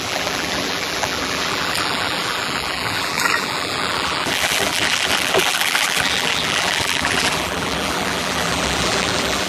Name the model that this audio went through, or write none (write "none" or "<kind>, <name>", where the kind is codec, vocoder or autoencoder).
vocoder, BigVGAN v2